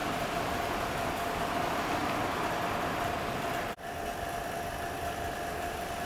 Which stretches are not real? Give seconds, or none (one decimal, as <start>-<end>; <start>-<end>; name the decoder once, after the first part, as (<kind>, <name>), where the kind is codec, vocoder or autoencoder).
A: 0.9-6.1 (vocoder, BigVGAN v2)